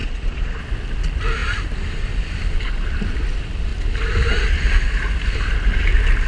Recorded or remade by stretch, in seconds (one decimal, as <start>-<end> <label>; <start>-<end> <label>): 0.0-0.6 remade; 0.6-6.3 recorded